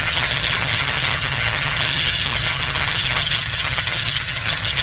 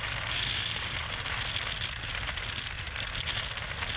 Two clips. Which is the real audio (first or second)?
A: second